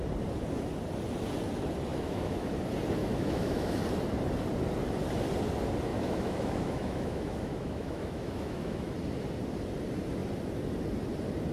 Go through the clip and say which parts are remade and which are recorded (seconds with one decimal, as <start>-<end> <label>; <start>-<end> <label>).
0.0-1.9 recorded; 1.9-2.5 remade; 2.5-3.0 recorded; 3.0-3.8 remade; 3.8-5.9 recorded; 5.9-8.9 remade; 8.9-11.5 recorded